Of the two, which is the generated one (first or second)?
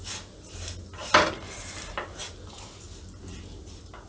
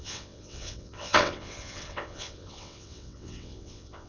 second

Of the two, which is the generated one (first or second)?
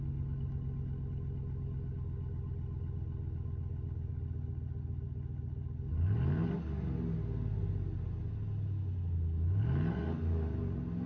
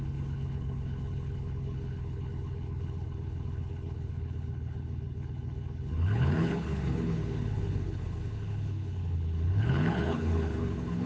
second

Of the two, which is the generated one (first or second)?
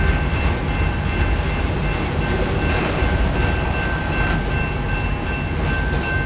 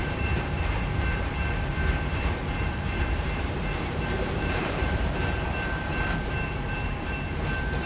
second